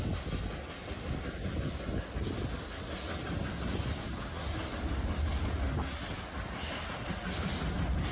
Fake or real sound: real